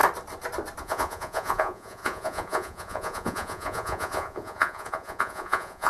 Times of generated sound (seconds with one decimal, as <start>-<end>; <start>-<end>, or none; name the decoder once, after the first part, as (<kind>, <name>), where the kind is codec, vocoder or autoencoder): 0.8-5.9 (vocoder, Vocos)

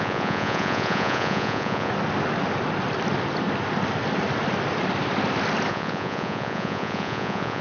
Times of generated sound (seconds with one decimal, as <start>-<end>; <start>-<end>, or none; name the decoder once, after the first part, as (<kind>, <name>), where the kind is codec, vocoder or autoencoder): 0.0-1.9 (vocoder, Vocos); 5.7-7.6

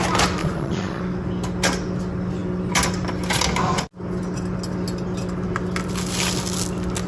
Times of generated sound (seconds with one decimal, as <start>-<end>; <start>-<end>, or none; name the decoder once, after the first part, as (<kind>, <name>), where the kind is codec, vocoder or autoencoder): 0.4-1.0 (vocoder, Vocos)

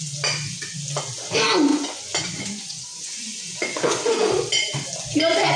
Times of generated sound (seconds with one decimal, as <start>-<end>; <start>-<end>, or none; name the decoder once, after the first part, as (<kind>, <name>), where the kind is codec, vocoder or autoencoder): 1.7-4.2 (vocoder, Vocos)

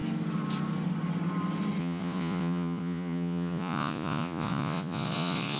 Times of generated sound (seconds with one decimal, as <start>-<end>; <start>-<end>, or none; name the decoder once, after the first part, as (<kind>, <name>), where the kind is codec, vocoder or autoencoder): 1.8-5.6 (vocoder, Vocos)

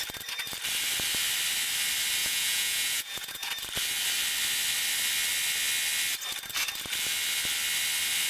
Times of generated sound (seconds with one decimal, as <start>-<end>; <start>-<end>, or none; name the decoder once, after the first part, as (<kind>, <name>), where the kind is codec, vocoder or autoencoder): 2.2-3.5 (vocoder, Vocos)

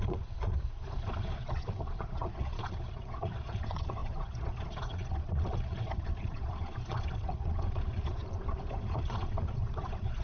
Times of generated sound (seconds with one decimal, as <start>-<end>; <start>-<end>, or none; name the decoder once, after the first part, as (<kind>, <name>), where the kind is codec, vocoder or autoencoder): 0.0-10.2 (vocoder, Vocos)

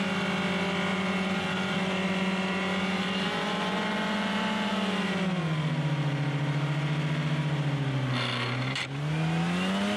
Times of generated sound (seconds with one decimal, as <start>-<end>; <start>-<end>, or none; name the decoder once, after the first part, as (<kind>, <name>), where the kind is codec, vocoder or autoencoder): 0.9-4.7 (vocoder, Vocos)